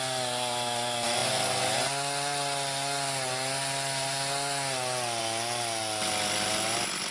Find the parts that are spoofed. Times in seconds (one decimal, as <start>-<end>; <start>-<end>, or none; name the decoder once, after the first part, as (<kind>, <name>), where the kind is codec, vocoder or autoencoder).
none